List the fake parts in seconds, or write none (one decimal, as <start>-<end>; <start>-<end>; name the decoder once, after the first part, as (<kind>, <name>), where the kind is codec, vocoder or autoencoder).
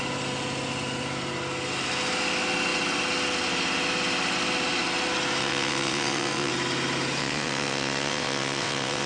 5.4-6.5 (vocoder, WaveNeXt); 7.2-9.1